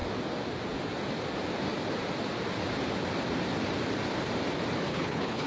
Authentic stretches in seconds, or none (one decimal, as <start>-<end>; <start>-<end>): 0.0-4.9